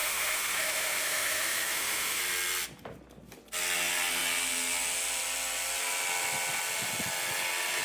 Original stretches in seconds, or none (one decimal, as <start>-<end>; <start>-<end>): 2.2-7.8